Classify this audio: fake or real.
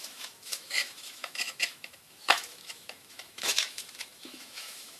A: fake